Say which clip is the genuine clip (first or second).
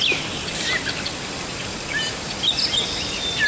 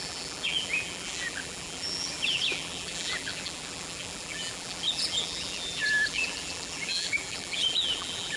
first